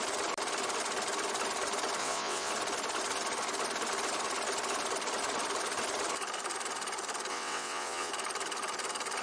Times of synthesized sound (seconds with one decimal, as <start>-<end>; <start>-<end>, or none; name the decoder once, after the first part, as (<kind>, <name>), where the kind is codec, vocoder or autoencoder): 2.0-2.5 (vocoder, WaveNeXt); 7.3-8.1